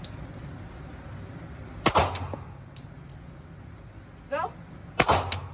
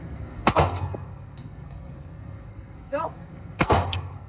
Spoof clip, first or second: second